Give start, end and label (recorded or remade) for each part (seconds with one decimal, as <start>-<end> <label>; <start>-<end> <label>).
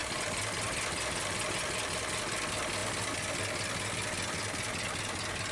0.0-5.5 recorded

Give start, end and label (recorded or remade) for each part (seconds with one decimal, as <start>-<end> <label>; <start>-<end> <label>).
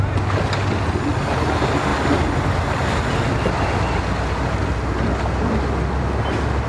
0.0-6.7 recorded